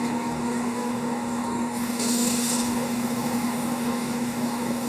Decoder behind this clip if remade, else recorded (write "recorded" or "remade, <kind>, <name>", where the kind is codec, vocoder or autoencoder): remade, codec, DAC